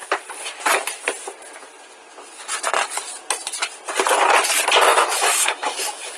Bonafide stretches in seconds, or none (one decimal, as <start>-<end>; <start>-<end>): 0.0-4.9